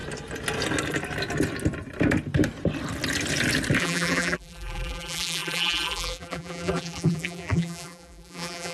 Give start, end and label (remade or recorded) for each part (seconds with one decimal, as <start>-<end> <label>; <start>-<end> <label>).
0.0-3.8 recorded; 3.8-8.7 remade